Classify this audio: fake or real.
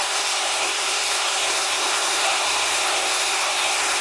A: fake